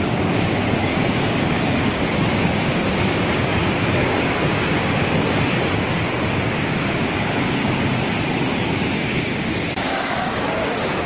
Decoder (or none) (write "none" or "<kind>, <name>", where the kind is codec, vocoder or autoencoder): codec, DAC